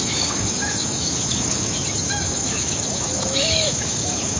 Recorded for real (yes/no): no